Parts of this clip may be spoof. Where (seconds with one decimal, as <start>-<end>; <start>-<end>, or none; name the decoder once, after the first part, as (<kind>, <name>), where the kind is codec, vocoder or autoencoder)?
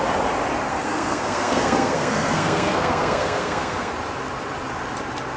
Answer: 0.7-3.9 (codec, SNAC)